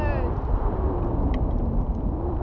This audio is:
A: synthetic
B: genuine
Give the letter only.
B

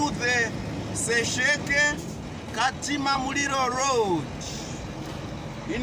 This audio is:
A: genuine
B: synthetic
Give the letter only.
A